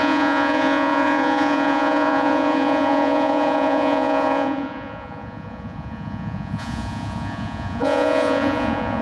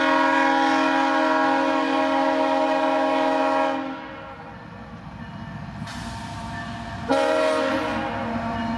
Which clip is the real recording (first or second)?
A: second